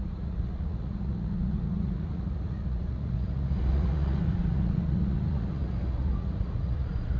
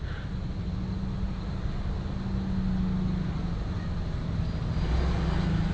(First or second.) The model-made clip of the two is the first